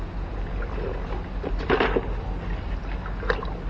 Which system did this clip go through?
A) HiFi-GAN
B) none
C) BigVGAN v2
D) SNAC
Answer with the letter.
B